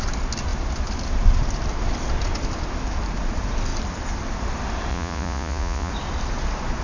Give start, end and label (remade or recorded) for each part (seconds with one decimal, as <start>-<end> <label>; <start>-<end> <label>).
0.0-4.9 recorded; 4.9-5.9 remade; 5.9-6.8 recorded